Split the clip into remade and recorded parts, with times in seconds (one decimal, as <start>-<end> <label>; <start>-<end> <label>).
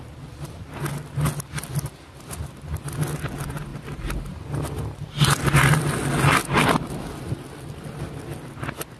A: 0.0-3.7 recorded; 3.7-5.2 remade; 5.2-9.0 recorded